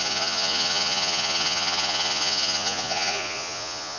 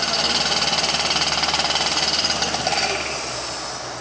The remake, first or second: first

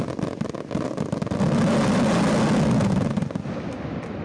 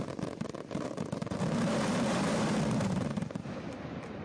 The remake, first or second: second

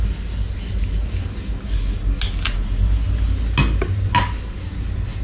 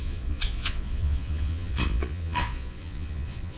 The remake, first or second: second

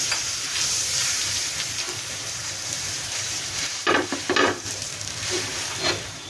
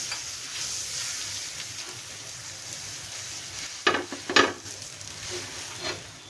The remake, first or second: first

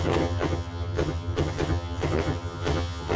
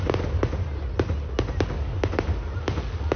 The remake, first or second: first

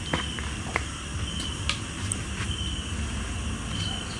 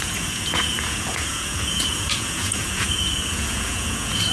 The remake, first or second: second